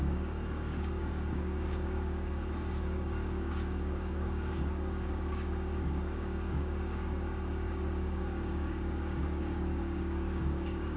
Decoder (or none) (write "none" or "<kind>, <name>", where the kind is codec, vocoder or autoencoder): codec, DAC